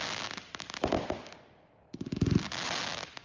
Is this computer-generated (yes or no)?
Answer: no